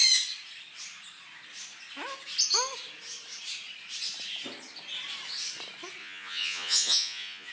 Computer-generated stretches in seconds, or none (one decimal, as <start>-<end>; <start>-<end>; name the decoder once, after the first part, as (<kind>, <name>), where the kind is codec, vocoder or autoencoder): 6.0-7.5 (vocoder, Vocos)